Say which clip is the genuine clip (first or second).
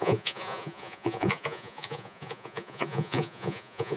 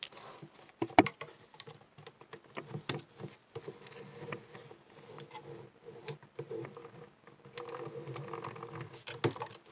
second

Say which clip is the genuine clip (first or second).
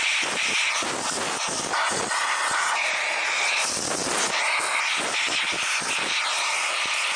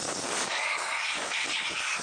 first